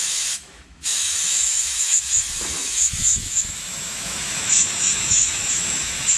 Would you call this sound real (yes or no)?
no